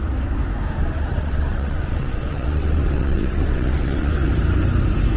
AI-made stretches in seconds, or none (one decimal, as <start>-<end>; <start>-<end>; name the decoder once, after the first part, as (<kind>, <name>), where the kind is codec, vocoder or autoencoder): 1.2-4.3 (vocoder, WaveNeXt)